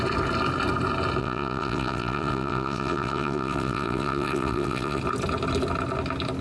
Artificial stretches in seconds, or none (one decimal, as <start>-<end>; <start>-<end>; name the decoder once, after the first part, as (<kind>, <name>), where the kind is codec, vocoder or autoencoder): 1.2-5.0 (vocoder, WaveNeXt)